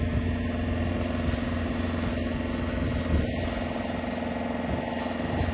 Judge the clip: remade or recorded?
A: recorded